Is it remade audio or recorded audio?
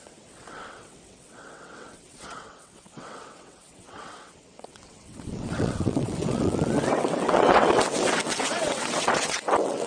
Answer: remade